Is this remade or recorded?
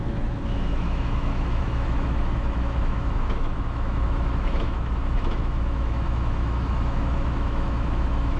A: remade